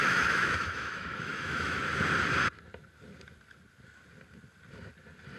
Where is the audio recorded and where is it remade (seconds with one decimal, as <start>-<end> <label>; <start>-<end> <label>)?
0.0-1.8 remade; 1.8-5.4 recorded